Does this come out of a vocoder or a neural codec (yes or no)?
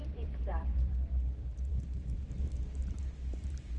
yes